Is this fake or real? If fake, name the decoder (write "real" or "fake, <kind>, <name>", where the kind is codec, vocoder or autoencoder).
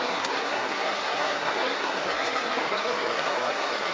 fake, codec, SNAC